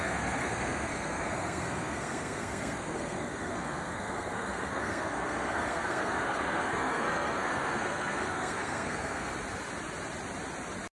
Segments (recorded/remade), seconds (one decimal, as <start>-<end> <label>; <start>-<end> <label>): 0.0-9.3 remade; 9.3-10.9 recorded